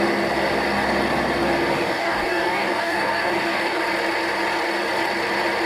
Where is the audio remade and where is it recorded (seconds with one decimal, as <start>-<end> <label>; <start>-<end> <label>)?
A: 0.0-1.7 recorded; 1.7-3.8 remade; 3.8-5.7 recorded